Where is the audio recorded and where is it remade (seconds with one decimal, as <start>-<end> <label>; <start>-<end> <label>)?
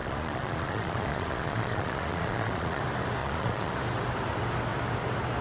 0.0-2.8 remade; 2.8-3.2 recorded; 3.2-3.7 remade; 3.7-5.4 recorded